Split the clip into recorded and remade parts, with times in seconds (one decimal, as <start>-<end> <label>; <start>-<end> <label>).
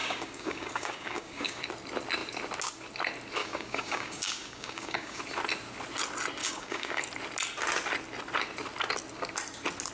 0.0-1.6 remade; 1.6-3.4 recorded; 3.4-5.2 remade; 5.2-6.4 recorded; 6.4-7.0 remade; 7.0-9.9 recorded